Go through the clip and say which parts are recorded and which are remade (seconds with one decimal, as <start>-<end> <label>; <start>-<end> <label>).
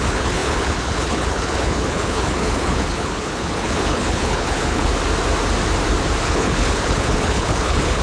0.0-4.9 remade; 4.9-6.2 recorded; 6.2-8.0 remade